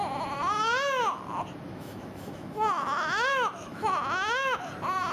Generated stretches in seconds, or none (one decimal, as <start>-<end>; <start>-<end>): 1.7-4.6